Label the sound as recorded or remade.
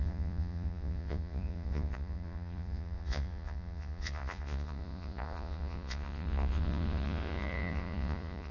remade